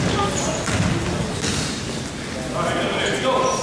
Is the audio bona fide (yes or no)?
yes